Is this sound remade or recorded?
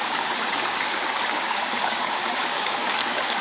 remade